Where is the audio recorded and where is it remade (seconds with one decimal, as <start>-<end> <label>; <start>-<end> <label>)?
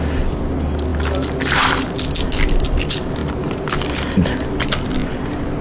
0.0-5.6 recorded